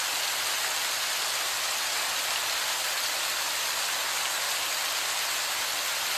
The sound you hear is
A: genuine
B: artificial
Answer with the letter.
A